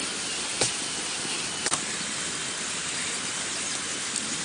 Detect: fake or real real